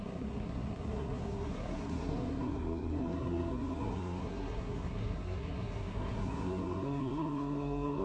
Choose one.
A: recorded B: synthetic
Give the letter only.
B